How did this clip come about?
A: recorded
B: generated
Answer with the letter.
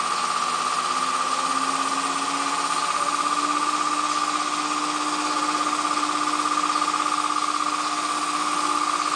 A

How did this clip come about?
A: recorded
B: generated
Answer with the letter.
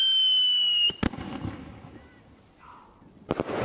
A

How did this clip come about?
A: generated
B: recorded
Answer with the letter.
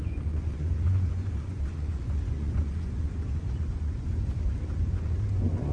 A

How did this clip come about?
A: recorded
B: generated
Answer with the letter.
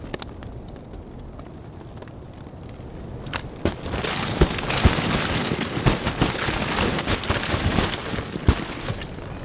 A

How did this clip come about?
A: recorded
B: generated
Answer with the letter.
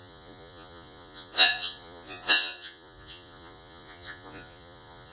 B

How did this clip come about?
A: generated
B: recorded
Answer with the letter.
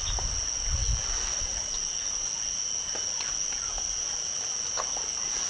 B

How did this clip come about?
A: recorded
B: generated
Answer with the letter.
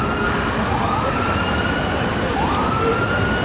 A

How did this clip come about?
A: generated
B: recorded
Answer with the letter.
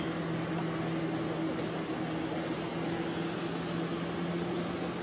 B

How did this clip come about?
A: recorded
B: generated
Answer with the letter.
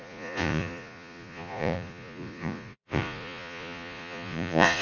B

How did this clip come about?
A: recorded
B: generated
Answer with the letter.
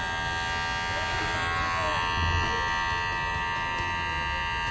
A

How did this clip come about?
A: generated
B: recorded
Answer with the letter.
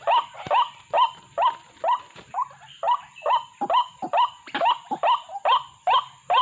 B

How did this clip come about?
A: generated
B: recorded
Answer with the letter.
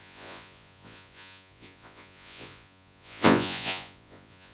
A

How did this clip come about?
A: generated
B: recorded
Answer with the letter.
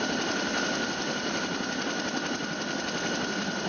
B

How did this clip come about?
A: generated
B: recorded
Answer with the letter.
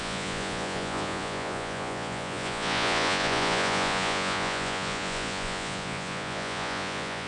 A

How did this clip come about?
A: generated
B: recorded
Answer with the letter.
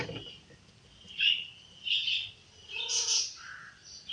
B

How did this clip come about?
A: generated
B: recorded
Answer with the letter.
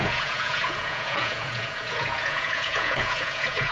A